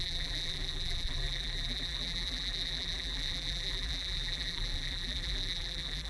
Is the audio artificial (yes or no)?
yes